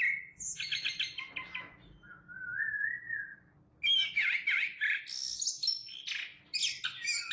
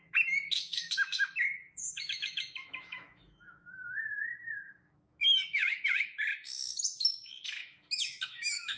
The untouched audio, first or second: first